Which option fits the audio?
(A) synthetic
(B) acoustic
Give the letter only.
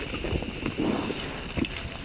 B